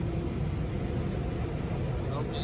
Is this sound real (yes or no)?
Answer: yes